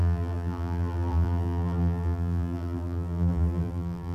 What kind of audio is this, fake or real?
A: fake